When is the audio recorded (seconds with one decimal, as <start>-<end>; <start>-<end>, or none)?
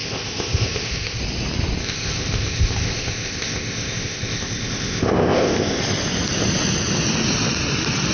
1.2-1.8; 5.8-8.1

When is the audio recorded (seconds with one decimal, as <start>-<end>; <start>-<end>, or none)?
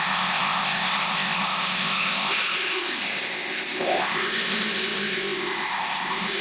none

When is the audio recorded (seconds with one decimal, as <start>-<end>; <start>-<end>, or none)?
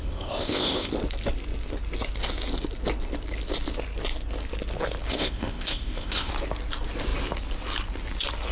0.9-5.1; 6.3-8.5